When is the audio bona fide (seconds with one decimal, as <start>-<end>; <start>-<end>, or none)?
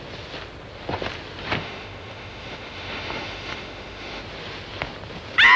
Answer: 0.0-1.6; 4.2-5.6